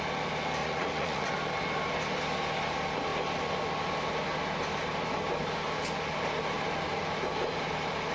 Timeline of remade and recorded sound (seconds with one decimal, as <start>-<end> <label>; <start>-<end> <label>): 0.0-0.6 recorded; 0.6-1.3 remade; 1.3-8.1 recorded